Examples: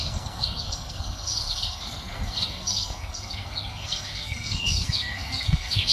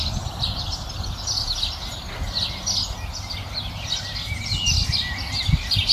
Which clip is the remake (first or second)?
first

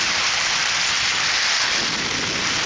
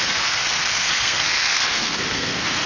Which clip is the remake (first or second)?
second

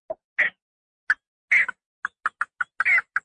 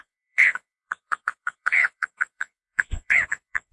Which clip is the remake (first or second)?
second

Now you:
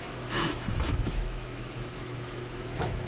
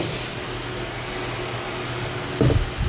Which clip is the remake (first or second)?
first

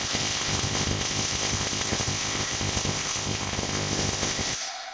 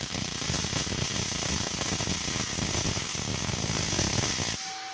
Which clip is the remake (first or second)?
first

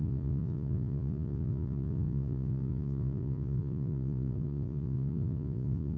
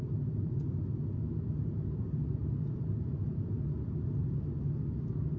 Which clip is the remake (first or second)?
first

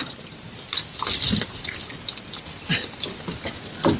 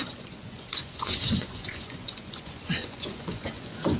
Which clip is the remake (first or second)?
second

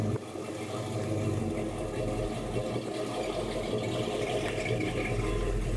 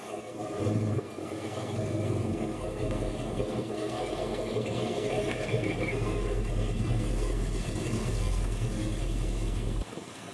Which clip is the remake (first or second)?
second